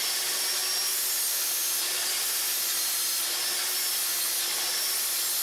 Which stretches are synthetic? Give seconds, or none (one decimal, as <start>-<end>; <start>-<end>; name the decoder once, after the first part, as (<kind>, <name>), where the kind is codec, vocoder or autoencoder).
none